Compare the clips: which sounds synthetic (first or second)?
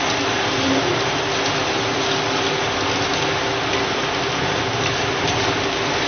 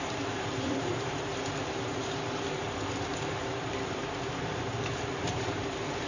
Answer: second